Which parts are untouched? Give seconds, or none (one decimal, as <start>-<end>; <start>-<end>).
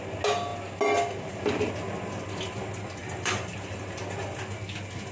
0.0-3.0; 3.5-5.1